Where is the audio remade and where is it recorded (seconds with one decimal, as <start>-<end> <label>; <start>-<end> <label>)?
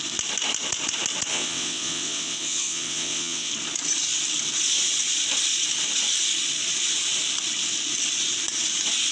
0.0-1.3 recorded; 1.3-3.5 remade; 3.5-9.1 recorded